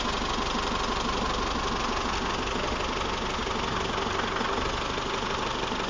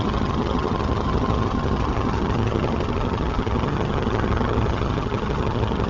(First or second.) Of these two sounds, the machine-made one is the second